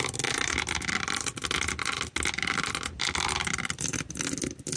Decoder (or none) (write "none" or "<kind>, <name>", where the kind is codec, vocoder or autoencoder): none